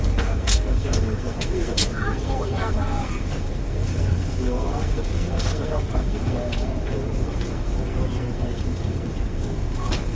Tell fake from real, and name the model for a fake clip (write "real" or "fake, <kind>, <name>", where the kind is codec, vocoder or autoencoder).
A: fake, codec, SNAC